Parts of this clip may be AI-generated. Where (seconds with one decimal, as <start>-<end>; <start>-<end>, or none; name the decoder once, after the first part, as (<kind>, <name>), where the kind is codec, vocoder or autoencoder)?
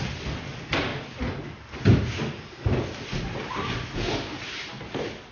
none